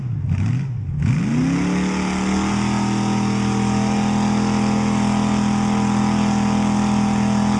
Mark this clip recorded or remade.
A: recorded